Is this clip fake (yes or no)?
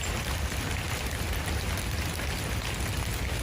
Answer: no